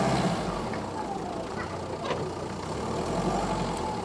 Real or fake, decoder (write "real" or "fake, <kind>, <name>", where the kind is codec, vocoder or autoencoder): real